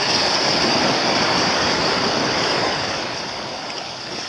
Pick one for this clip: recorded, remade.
remade